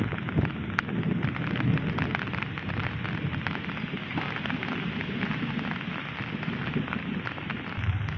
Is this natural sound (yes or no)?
yes